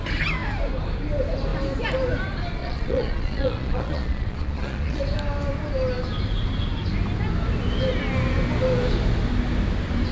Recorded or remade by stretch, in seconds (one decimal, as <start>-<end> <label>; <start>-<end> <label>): 0.0-2.6 recorded; 2.6-5.0 remade; 5.0-10.1 recorded